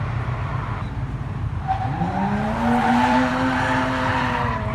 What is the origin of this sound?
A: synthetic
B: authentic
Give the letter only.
A